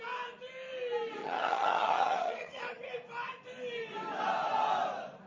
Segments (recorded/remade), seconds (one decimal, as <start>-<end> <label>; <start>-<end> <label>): 0.0-1.2 recorded; 1.2-2.9 remade; 2.9-5.3 recorded